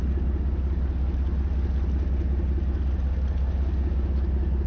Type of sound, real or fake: real